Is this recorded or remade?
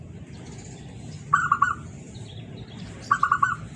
recorded